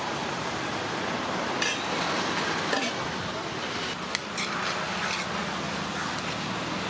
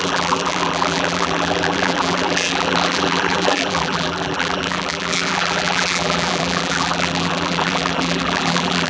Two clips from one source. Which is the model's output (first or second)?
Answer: second